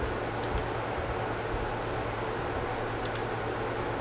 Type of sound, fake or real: real